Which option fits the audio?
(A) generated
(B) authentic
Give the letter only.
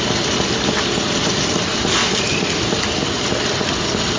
B